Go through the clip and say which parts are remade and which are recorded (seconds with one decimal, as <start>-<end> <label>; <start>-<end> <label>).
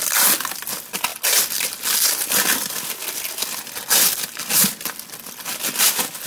0.0-6.3 recorded